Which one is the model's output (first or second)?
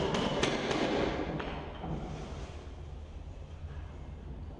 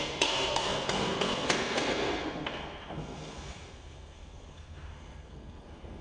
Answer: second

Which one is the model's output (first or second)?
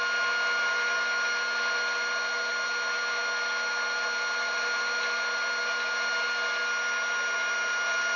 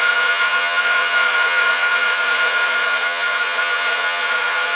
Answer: second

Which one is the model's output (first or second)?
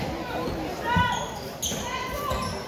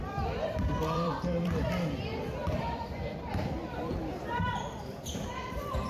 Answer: second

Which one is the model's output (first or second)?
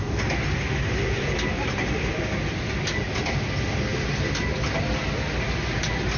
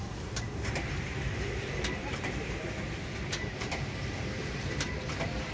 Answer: second